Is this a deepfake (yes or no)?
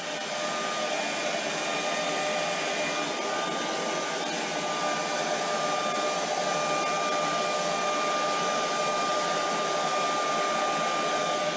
no